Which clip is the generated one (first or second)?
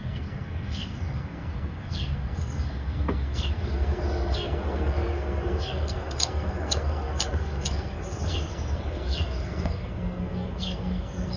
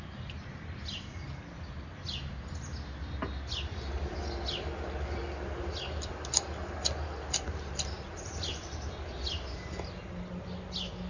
first